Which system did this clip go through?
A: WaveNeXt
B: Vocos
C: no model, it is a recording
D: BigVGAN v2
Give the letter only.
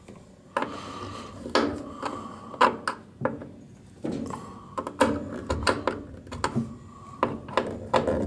C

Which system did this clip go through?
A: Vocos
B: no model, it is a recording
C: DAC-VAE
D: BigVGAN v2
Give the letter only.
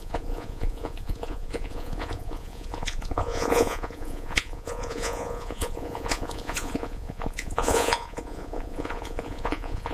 A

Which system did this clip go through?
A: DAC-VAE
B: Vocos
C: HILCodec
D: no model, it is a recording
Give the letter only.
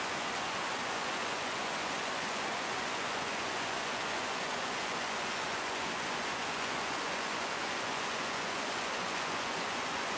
B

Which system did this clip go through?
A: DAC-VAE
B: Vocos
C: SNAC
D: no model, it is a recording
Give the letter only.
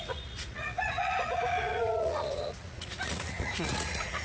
B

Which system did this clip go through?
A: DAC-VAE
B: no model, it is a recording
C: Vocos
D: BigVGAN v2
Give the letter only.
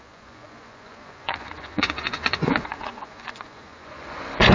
C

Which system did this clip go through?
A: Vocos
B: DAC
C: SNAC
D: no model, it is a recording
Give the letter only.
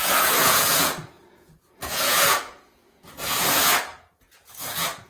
A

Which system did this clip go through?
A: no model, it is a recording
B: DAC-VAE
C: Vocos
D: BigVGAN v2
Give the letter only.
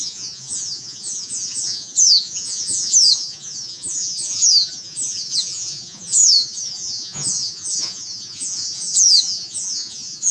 C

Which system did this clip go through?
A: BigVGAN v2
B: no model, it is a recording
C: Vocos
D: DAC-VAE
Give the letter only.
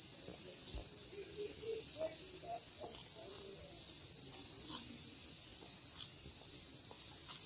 B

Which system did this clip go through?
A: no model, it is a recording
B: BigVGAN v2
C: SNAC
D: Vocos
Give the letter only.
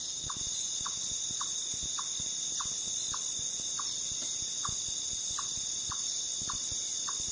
A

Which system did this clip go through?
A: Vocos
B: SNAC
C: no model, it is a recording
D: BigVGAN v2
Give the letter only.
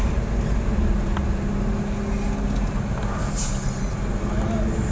C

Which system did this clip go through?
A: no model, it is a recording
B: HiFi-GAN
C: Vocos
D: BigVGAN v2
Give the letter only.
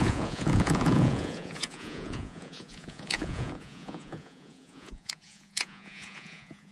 C